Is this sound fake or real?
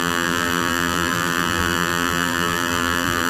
fake